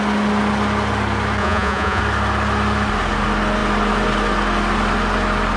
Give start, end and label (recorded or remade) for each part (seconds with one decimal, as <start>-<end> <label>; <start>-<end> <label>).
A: 0.0-1.4 recorded; 1.4-2.0 remade; 2.0-5.6 recorded